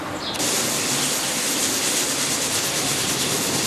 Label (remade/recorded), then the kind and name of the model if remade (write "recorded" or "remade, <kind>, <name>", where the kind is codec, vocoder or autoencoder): recorded